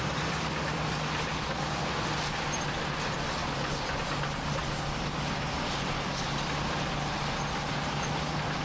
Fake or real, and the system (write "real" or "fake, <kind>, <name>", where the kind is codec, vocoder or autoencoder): real